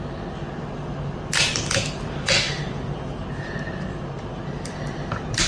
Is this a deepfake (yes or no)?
no